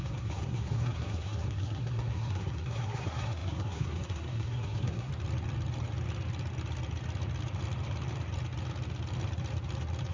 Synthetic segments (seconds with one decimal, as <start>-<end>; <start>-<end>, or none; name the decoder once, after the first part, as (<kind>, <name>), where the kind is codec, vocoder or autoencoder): 0.0-5.1 (codec, SNAC)

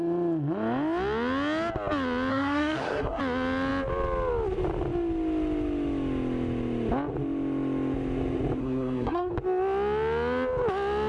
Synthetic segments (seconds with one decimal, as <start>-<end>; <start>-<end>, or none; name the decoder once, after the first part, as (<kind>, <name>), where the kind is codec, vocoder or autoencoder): 2.3-3.2 (codec, SNAC); 8.6-9.3

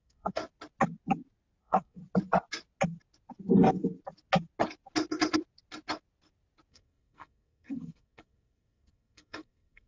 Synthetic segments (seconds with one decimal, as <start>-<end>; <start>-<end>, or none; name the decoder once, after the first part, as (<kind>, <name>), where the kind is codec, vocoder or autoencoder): 0.0-0.4 (codec, SNAC); 1.6-2.0; 6.7-9.9

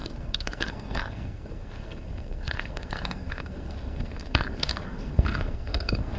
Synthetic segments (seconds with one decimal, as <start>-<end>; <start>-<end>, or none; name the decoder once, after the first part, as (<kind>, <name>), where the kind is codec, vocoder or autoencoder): 0.0-6.2 (codec, SNAC)